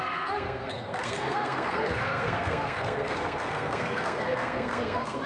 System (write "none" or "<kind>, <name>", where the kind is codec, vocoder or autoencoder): codec, SNAC